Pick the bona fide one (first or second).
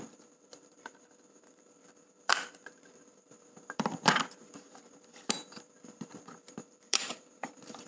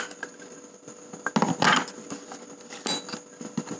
second